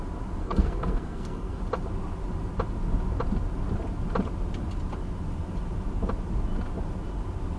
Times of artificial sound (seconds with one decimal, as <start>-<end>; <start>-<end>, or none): 0.4-1.6